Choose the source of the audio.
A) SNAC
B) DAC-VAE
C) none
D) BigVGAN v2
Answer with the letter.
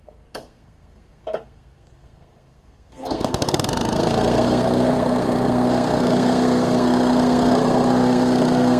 A